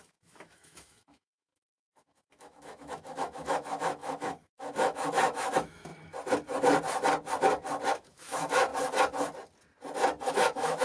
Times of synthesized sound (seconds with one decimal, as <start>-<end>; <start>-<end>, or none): 0.0-5.9; 7.9-8.7; 10.3-10.8